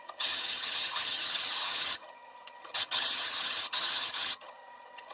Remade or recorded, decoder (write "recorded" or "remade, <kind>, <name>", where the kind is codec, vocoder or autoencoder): remade, vocoder, HiFi-GAN